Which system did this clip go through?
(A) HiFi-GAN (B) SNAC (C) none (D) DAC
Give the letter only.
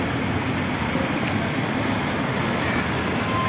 C